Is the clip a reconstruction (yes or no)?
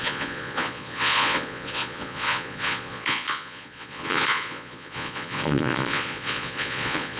yes